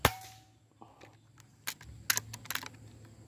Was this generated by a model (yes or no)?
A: no